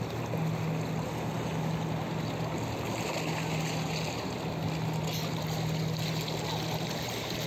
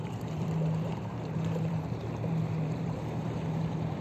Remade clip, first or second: second